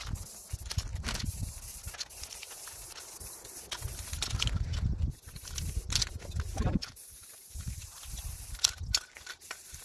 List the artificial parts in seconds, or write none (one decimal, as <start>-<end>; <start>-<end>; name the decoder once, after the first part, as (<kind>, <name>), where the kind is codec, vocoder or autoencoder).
none